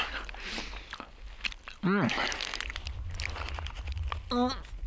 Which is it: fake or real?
real